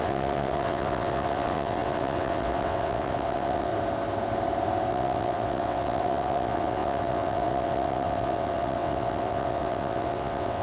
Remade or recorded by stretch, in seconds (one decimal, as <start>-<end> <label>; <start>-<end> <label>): 0.0-3.7 remade; 3.7-4.9 recorded; 4.9-10.6 remade